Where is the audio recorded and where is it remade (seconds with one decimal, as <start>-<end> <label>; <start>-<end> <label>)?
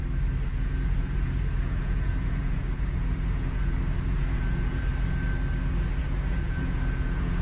0.0-0.5 recorded; 0.5-4.8 remade; 4.8-6.0 recorded; 6.0-7.4 remade